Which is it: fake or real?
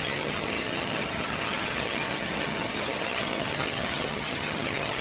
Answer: fake